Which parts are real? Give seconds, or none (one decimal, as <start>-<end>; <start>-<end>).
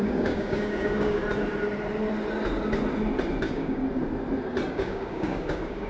1.2-3.4; 3.8-4.7